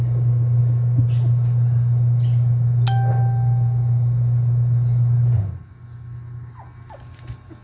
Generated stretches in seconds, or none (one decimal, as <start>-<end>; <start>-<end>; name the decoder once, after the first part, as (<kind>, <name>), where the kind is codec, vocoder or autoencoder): none